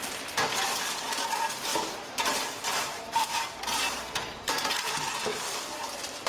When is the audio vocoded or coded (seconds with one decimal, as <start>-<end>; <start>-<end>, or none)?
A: 1.7-3.6; 5.3-6.3